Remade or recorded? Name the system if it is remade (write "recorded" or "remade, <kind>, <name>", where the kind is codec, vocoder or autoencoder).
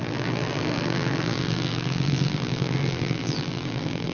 remade, vocoder, BigVGAN v2